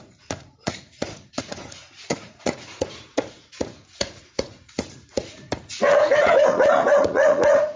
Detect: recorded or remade remade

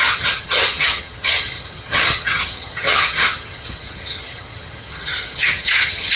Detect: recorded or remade remade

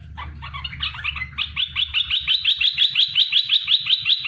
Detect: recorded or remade recorded